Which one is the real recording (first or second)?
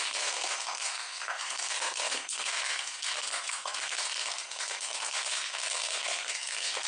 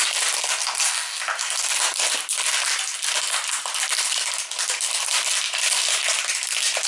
second